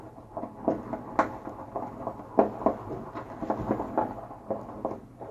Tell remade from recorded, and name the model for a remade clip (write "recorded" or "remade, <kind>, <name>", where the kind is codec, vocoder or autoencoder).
recorded